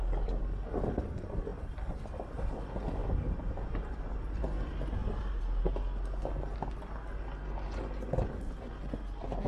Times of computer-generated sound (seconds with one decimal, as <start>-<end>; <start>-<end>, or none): 3.0-4.4; 5.0-5.6